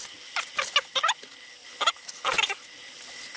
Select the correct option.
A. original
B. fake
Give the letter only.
A